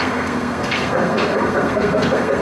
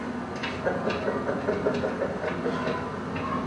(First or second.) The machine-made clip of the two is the first